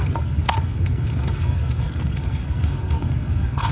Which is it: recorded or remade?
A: remade